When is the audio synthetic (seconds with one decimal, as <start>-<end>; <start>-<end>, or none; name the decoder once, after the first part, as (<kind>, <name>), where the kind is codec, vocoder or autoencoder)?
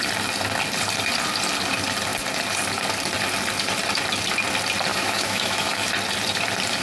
4.9-5.9 (autoencoder, DAC-VAE)